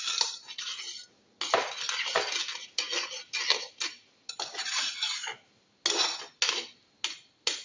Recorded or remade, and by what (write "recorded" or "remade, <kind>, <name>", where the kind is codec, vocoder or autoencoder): recorded